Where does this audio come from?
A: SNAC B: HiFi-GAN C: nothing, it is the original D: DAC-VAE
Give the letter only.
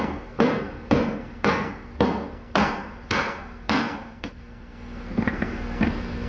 A